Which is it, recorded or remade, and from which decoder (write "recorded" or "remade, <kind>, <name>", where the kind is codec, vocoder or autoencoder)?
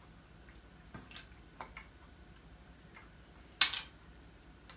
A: recorded